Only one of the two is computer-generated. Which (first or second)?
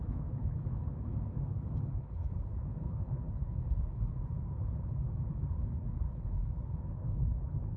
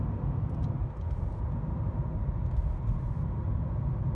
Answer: first